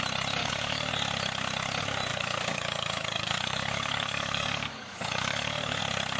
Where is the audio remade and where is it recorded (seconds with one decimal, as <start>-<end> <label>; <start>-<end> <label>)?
0.0-0.4 recorded; 0.4-0.9 remade; 0.9-2.1 recorded; 2.1-5.8 remade; 5.8-6.2 recorded